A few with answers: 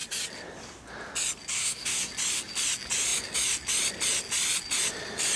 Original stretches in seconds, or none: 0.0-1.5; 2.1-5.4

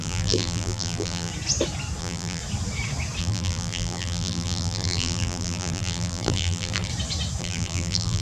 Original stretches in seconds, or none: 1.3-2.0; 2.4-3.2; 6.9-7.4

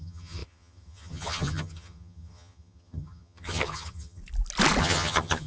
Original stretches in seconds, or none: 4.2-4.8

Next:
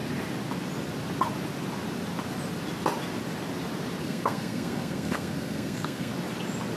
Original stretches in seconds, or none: 0.0-4.0; 6.1-6.8

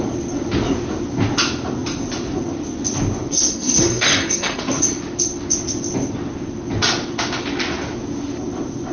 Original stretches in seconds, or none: 0.0-3.3; 4.6-8.9

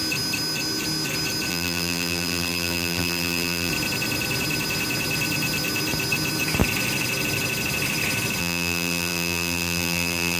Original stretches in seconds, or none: 0.0-1.5; 3.7-8.4

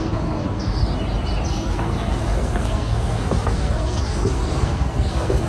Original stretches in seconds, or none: 0.8-1.5